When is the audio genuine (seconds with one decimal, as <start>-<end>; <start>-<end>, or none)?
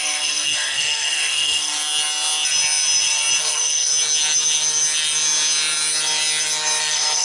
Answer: 1.7-3.4; 3.9-6.8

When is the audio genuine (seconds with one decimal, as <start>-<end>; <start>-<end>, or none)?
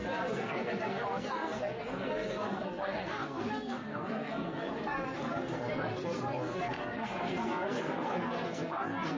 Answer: none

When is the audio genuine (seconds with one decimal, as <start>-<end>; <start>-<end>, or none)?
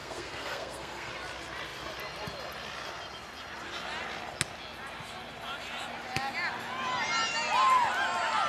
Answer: 1.1-8.5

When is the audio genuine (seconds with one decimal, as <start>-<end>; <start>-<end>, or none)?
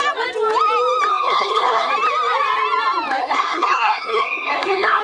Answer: 0.0-1.1; 1.9-3.2